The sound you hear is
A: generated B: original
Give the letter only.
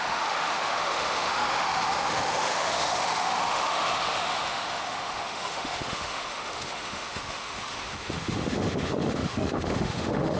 A